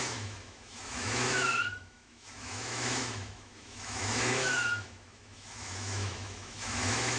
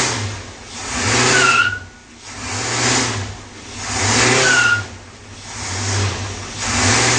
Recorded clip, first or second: second